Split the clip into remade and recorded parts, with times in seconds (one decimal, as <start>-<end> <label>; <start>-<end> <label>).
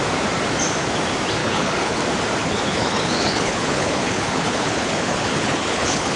0.0-1.4 recorded; 1.4-2.0 remade; 2.0-2.4 recorded; 2.4-6.2 remade